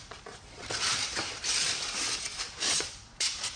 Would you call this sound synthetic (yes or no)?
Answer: yes